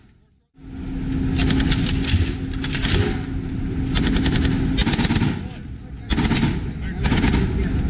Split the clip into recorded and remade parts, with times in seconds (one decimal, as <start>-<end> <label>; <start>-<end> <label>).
0.0-7.9 recorded